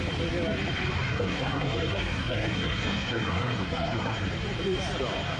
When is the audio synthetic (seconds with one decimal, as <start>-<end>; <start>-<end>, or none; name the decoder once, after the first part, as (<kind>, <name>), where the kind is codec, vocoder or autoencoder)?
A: 1.1-4.3 (codec, SNAC)